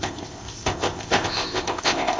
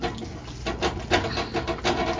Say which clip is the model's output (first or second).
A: first